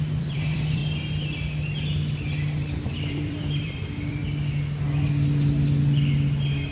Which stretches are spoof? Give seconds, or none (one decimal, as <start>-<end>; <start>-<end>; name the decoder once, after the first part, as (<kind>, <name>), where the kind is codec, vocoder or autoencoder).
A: 0.0-0.8 (vocoder, BigVGAN v2); 3.0-4.2